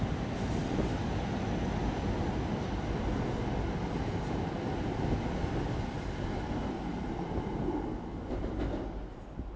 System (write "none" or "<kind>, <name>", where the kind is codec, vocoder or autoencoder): none